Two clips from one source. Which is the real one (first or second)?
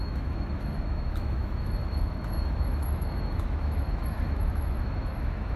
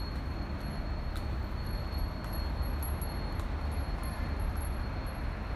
second